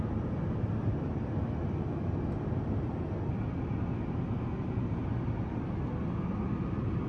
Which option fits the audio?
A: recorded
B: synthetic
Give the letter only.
A